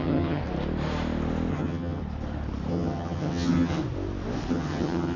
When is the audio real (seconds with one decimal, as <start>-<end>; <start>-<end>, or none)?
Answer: 0.4-1.5; 2.0-2.7; 3.8-4.5